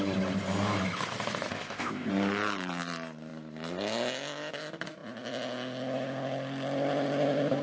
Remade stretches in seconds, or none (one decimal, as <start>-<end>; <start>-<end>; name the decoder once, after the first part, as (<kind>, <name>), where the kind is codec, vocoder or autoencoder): 1.5-2.1 (codec, ZipCodec)